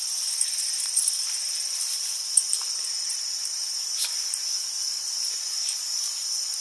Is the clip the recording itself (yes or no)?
no